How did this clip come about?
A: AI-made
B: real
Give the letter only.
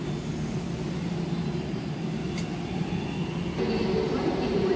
B